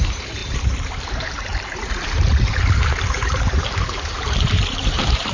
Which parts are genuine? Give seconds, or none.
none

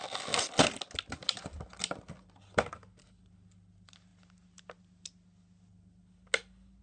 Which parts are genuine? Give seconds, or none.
0.0-6.8

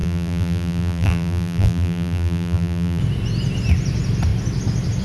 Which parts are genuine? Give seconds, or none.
3.0-5.0

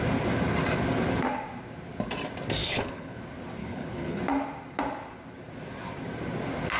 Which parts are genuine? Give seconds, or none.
0.0-2.6; 3.2-3.6; 4.2-6.8

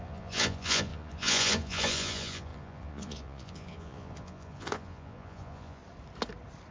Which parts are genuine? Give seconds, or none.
5.8-6.7

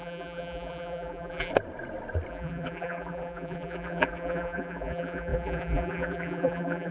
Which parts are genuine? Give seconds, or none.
1.5-2.3